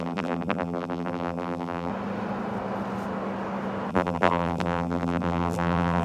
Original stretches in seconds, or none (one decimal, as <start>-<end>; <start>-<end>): 1.9-3.9